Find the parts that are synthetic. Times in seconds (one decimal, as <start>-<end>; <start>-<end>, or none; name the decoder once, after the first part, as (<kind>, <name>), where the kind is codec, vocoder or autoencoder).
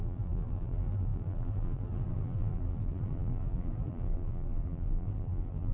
0.0-5.7 (vocoder, BigVGAN v2)